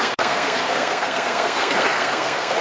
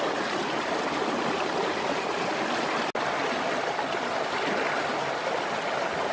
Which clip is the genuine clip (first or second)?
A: second